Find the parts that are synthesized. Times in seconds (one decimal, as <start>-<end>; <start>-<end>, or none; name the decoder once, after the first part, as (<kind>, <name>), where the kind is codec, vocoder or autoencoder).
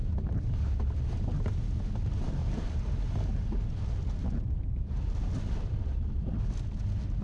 0.0-1.2 (vocoder, BigVGAN v2); 2.4-6.4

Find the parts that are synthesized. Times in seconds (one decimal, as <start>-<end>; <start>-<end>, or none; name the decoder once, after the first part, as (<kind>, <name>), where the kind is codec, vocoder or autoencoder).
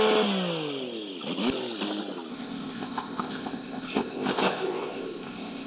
2.3-5.7 (codec, ZipCodec)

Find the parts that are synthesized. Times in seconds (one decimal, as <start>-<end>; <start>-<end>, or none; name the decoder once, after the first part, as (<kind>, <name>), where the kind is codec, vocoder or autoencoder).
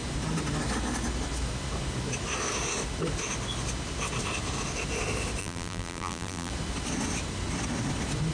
5.4-6.5 (vocoder, BigVGAN v2)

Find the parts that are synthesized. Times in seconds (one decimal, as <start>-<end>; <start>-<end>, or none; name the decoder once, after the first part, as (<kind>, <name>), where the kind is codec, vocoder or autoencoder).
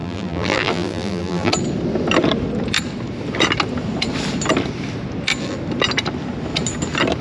0.0-1.5 (vocoder, BigVGAN v2)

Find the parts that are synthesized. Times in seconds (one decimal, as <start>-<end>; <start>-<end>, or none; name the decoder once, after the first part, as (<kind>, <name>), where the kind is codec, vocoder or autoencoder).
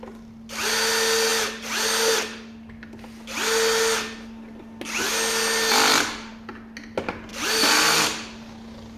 7.3-8.0 (vocoder, BigVGAN v2)